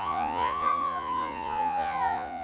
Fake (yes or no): yes